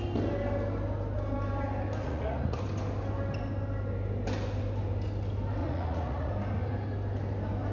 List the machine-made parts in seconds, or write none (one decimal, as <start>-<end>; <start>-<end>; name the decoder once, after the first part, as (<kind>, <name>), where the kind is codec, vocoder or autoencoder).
2.0-2.6 (vocoder, Vocos); 5.6-6.3